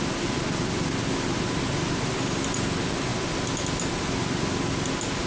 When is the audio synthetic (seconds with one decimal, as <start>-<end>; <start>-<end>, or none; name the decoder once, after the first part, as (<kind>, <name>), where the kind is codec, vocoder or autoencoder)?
none